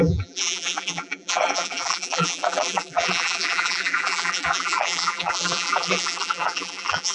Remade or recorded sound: remade